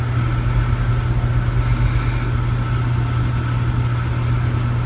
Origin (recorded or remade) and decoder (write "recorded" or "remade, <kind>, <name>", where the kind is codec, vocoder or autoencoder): recorded